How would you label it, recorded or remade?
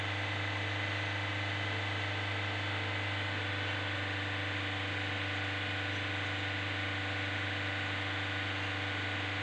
recorded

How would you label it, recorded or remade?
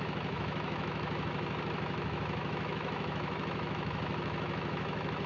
remade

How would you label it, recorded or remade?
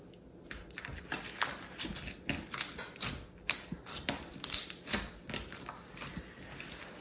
recorded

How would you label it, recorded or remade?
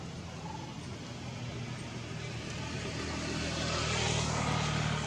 recorded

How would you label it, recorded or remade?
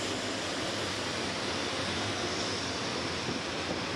recorded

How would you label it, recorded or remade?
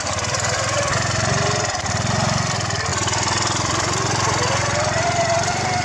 remade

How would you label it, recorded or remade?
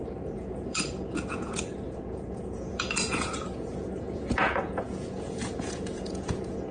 remade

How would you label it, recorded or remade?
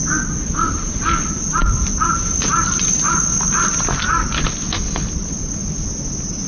recorded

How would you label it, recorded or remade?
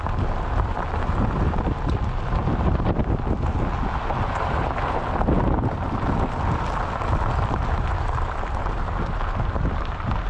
recorded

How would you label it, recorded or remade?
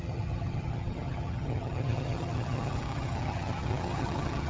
remade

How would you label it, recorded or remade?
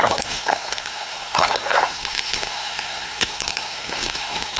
remade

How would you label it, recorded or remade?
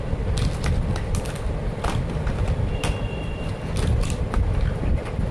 recorded